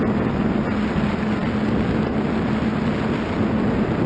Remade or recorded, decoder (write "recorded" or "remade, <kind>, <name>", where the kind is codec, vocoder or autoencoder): recorded